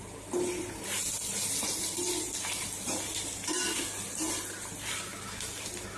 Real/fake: real